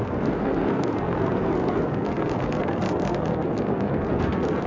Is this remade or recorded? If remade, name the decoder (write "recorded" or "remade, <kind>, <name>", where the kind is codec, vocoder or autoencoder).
remade, codec, SNAC